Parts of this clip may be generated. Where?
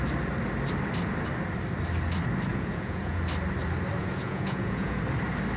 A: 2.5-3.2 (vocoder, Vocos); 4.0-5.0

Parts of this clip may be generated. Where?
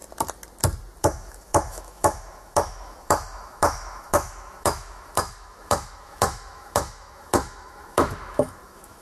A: 1.0-9.0 (autoencoder, DAC-VAE)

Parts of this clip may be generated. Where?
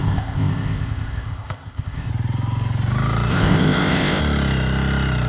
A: 0.0-2.1 (codec, ZipCodec); 3.3-4.2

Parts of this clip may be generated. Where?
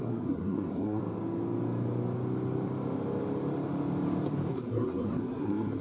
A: 0.0-1.0 (codec, SNAC); 4.5-5.8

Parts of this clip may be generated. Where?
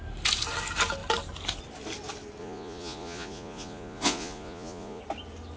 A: 2.4-5.0 (vocoder, Vocos)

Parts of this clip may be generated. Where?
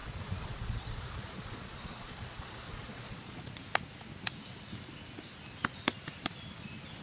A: 0.0-3.6 (vocoder, Vocos)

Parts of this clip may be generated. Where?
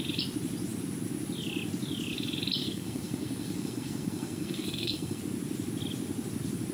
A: 2.6-5.2 (codec, SNAC)